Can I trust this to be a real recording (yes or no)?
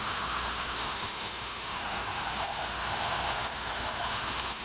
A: no